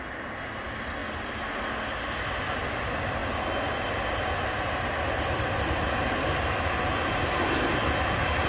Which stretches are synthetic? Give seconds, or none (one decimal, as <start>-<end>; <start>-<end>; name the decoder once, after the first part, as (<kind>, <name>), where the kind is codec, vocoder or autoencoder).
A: none